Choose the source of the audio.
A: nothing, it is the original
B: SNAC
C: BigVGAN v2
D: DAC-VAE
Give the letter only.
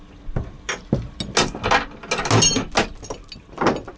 A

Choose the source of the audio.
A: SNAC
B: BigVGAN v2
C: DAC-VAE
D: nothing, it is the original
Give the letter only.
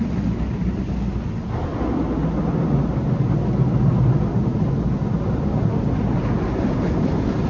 D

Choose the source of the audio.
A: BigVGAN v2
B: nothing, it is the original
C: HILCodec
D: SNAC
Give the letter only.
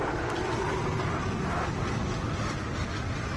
B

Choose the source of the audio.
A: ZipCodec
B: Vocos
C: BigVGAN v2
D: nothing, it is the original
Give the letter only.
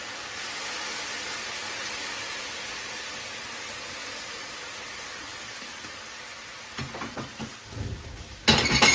D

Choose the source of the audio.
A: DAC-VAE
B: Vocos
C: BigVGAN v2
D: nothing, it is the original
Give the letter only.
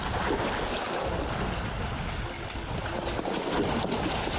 D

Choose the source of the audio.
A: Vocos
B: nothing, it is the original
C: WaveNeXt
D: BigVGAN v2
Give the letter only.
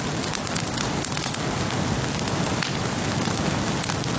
B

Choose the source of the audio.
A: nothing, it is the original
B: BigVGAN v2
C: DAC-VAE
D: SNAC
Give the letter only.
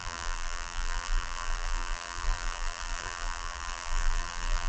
B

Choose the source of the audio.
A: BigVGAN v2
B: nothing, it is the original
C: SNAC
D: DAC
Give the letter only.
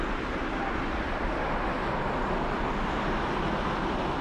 B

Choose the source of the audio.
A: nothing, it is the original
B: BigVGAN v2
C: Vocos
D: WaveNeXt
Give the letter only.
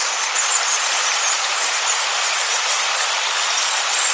B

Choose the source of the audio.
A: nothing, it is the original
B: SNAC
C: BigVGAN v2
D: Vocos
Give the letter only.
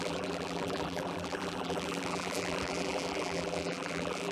C